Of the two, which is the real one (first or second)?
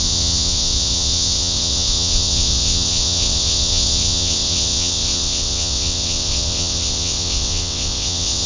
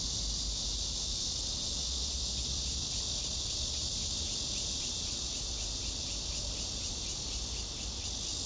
second